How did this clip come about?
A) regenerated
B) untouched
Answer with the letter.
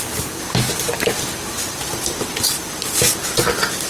B